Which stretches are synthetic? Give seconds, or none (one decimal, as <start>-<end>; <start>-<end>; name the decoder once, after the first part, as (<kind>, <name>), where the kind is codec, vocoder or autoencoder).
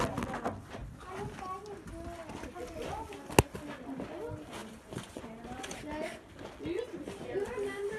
4.6-5.2 (vocoder, Vocos)